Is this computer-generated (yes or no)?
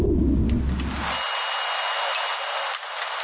no